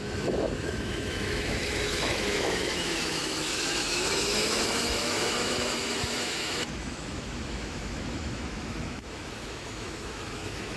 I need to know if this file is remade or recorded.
remade